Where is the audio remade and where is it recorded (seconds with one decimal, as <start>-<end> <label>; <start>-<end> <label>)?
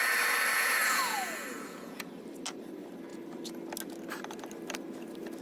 0.0-0.5 recorded; 0.5-2.0 remade; 2.0-5.4 recorded